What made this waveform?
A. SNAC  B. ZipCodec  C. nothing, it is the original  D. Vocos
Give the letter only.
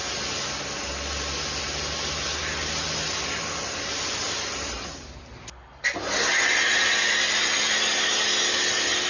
C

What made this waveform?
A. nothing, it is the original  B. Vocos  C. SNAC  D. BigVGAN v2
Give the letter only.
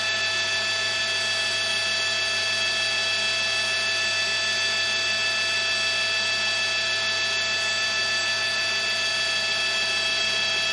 A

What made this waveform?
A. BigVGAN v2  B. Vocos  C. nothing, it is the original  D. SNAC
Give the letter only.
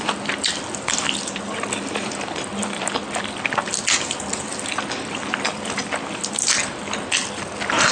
C